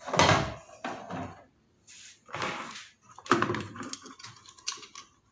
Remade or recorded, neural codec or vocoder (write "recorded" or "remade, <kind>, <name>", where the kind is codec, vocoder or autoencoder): recorded